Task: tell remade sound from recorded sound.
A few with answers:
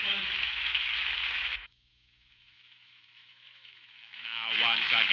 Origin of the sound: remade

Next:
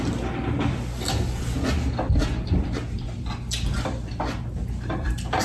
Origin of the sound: recorded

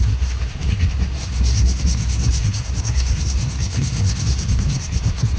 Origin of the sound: remade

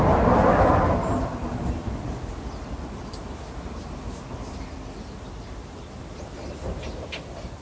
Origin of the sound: recorded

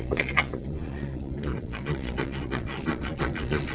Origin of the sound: remade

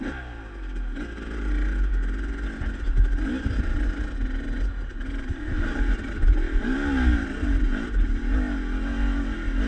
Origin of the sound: recorded